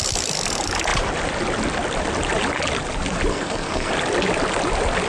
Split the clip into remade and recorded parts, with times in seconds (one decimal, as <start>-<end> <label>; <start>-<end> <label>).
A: 0.0-3.3 recorded; 3.3-3.9 remade; 3.9-5.1 recorded